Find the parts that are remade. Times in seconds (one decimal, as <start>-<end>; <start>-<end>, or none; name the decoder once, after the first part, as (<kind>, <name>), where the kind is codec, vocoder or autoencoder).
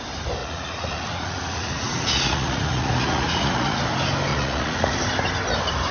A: 0.4-3.8 (vocoder, Vocos); 4.3-4.9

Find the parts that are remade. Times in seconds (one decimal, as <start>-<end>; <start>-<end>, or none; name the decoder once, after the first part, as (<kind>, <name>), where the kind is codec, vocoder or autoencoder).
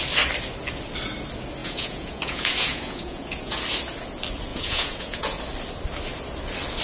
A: 1.6-3.6 (vocoder, Vocos); 4.5-5.4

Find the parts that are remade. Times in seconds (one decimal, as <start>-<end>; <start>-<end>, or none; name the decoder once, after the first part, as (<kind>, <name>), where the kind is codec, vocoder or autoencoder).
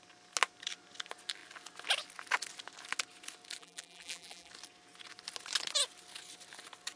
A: 3.6-4.5 (vocoder, BigVGAN v2)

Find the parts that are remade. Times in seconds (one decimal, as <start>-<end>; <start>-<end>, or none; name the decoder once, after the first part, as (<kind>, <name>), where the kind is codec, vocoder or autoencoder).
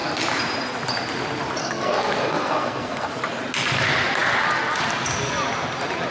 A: 1.6-3.1 (codec, SNAC)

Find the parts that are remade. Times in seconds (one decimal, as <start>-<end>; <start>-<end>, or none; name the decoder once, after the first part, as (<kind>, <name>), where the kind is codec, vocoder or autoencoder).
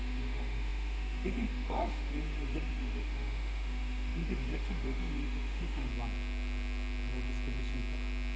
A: 0.0-5.9 (autoencoder, DAC-VAE)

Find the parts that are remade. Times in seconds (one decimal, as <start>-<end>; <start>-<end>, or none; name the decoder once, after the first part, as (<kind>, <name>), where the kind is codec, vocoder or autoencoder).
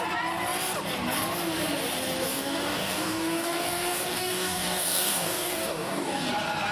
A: 2.3-6.3 (codec, DAC)